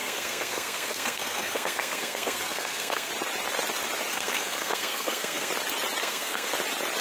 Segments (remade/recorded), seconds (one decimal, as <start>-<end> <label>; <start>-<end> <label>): 0.0-3.1 remade; 3.1-4.1 recorded; 4.1-5.5 remade; 5.5-6.0 recorded; 6.0-6.5 remade; 6.5-7.0 recorded